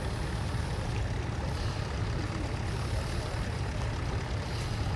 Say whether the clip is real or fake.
real